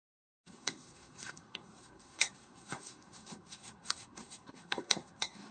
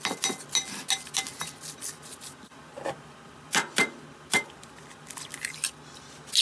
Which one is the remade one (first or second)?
first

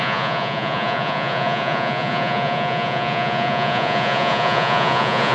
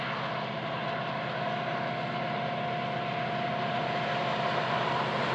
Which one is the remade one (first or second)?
first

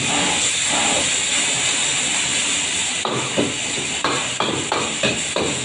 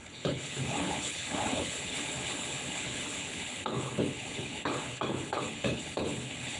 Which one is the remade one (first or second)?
second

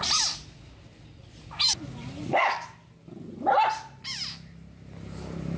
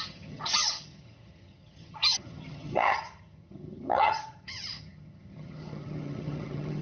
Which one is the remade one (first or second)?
second